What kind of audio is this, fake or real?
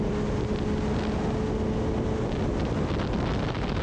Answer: real